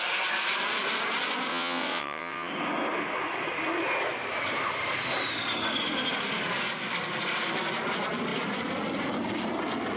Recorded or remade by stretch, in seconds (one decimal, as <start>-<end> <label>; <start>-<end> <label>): 0.0-1.5 recorded; 1.5-2.5 remade; 2.5-10.0 recorded